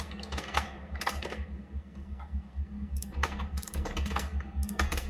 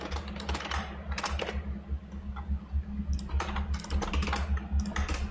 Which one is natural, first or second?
second